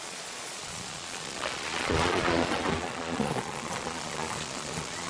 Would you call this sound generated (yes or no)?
yes